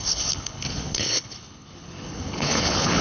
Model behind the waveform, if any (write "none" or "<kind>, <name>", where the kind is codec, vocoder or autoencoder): codec, HILCodec